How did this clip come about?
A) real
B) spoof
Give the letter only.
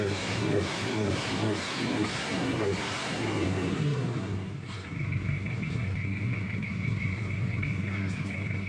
B